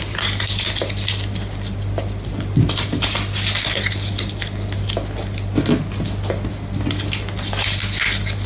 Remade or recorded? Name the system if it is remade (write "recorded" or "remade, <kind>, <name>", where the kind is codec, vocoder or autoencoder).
recorded